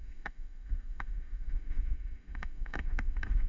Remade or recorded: remade